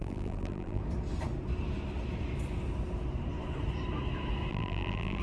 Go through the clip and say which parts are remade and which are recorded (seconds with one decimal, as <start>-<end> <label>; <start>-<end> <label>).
0.0-0.8 remade; 0.8-4.5 recorded; 4.5-5.2 remade